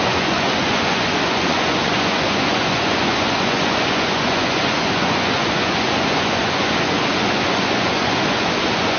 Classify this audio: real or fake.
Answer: fake